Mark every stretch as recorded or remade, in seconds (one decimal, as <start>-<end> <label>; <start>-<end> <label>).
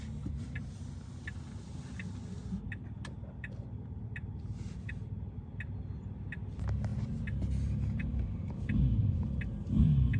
0.0-10.2 recorded